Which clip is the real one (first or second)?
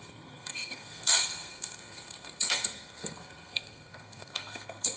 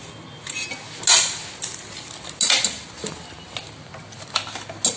second